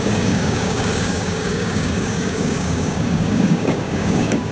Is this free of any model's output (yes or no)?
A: no